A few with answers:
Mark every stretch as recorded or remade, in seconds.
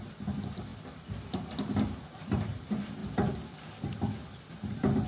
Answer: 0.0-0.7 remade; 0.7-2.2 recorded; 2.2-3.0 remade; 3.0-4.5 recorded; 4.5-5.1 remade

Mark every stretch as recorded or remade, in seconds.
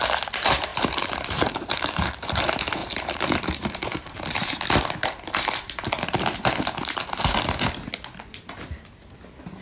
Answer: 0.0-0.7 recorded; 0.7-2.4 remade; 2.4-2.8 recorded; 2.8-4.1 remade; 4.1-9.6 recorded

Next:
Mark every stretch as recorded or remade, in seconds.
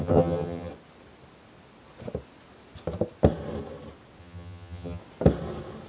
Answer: 0.0-0.7 remade; 0.7-4.2 recorded; 4.2-5.0 remade; 5.0-5.9 recorded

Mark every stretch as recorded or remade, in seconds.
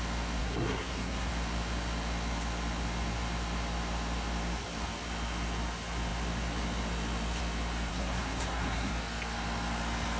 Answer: 0.0-0.4 recorded; 0.4-1.3 remade; 1.3-7.9 recorded; 7.9-8.9 remade; 8.9-10.2 recorded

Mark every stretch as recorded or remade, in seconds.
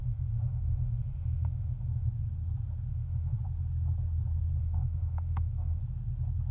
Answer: 0.0-2.1 remade; 2.1-2.9 recorded; 2.9-3.4 remade; 3.4-4.6 recorded; 4.6-5.8 remade; 5.8-6.5 recorded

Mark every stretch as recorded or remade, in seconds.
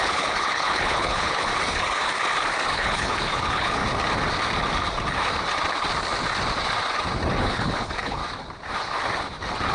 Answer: 0.0-1.5 remade; 1.5-2.7 recorded; 2.7-3.8 remade; 3.8-7.4 recorded; 7.4-8.2 remade; 8.2-9.7 recorded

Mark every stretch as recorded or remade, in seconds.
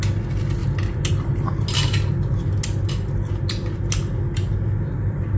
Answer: 0.0-5.4 recorded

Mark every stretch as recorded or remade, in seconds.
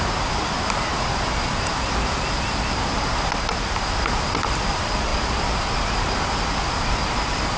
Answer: 0.0-7.6 recorded